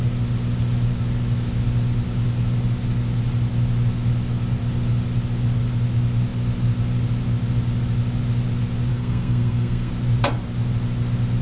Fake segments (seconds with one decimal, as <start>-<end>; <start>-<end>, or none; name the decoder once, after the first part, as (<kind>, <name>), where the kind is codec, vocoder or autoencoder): 8.9-9.9 (codec, SNAC)